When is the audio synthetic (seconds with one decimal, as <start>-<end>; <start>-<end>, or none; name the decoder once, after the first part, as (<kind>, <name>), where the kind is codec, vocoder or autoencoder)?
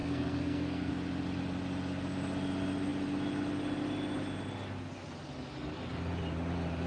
0.0-0.9 (codec, SNAC)